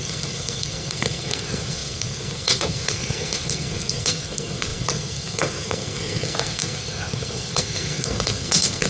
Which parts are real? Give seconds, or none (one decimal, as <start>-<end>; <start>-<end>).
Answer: none